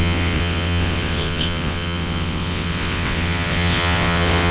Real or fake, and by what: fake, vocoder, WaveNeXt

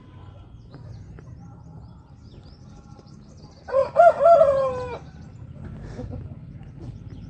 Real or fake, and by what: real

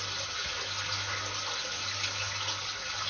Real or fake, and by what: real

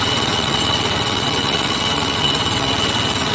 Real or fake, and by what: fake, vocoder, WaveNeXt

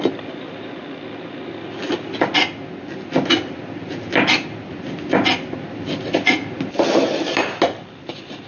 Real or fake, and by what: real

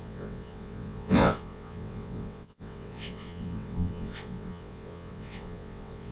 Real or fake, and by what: fake, vocoder, WaveNeXt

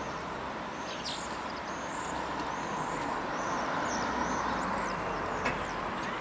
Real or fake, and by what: real